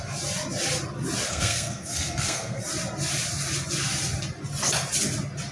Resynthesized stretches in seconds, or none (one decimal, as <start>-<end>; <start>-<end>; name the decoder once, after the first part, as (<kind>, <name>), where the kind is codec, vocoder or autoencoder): 1.3-2.6 (codec, SNAC)